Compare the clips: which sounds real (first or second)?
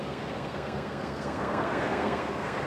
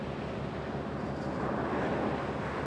second